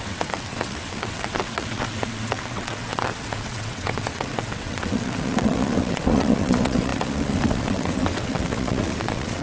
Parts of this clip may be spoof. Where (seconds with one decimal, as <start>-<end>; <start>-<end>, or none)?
0.0-9.4